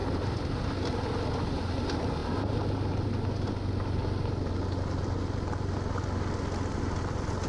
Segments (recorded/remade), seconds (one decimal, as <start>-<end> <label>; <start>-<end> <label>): 0.0-7.5 recorded